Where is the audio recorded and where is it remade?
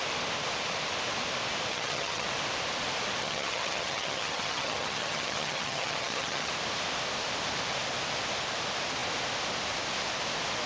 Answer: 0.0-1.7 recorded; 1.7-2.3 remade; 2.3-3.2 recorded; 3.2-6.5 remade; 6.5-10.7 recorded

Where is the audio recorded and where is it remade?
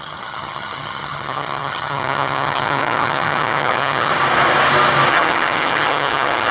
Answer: 0.0-4.1 remade; 4.1-5.1 recorded; 5.1-6.5 remade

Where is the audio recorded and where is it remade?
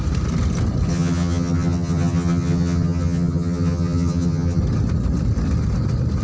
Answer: 0.0-0.9 recorded; 0.9-4.6 remade; 4.6-6.2 recorded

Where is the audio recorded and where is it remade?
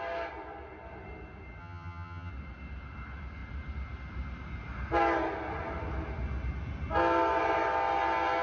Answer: 0.0-1.6 recorded; 1.6-2.3 remade; 2.3-8.4 recorded